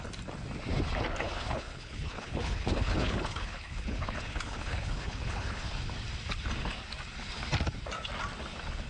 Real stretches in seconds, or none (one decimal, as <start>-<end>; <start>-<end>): 0.0-1.2; 5.7-8.9